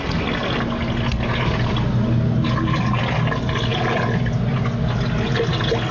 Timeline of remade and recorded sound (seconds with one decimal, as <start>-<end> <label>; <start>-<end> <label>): 0.0-5.9 recorded